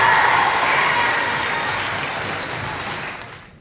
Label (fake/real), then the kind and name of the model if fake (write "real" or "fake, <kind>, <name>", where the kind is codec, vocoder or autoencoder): real